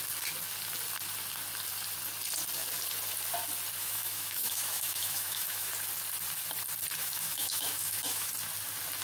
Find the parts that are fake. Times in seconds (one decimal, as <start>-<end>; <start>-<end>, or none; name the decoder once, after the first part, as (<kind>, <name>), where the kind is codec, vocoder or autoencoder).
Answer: 3.8-5.7 (autoencoder, DAC-VAE); 7.0-8.3